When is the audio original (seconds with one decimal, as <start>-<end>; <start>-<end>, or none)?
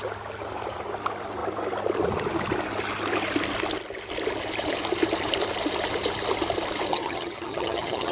0.0-6.9